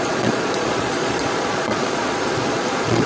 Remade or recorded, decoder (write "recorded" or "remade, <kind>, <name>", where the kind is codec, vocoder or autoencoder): remade, vocoder, Vocos